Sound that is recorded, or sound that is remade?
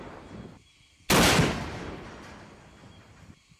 recorded